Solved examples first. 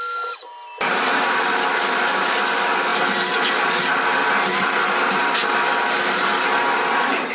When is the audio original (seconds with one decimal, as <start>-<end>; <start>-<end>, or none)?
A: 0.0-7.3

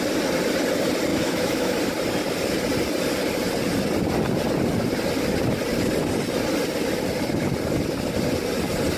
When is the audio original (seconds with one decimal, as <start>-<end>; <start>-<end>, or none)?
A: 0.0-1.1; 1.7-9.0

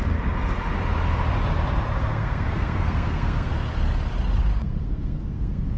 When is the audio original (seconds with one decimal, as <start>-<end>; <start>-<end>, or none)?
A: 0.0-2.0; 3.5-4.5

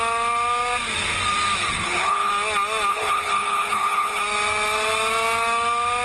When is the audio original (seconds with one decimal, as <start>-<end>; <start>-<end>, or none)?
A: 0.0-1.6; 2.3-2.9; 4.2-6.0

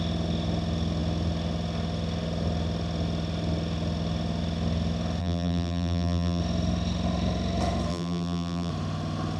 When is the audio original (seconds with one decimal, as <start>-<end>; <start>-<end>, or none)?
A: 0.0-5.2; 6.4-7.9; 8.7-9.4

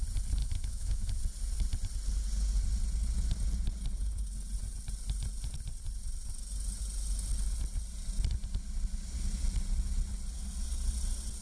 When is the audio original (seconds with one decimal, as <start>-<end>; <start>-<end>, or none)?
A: 0.0-0.4; 1.2-11.4

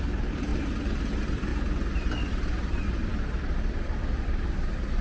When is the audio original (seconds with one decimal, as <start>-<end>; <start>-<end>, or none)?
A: 0.5-1.1; 1.5-2.3

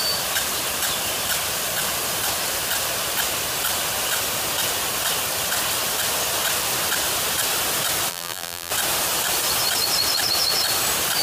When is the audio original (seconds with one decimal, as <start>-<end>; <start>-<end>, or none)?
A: 0.0-8.1; 8.7-11.2